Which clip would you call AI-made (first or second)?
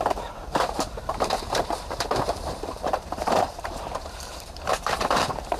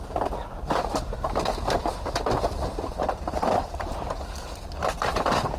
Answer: first